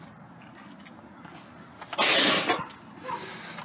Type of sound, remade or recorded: recorded